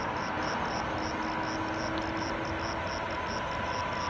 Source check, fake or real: real